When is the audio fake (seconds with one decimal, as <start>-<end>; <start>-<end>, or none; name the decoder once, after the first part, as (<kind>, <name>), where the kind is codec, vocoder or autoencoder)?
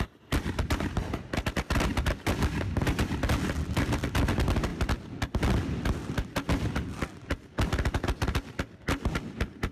1.9-3.2 (vocoder, BigVGAN v2)